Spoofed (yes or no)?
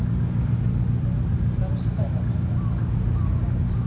no